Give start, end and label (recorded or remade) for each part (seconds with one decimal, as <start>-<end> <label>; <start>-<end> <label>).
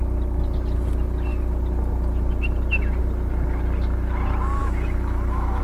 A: 0.0-4.6 recorded; 4.6-5.6 remade